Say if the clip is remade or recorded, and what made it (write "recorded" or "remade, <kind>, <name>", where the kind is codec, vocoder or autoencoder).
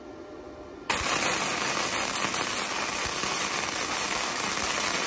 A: recorded